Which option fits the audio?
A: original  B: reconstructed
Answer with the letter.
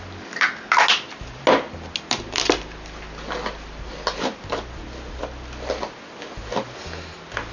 A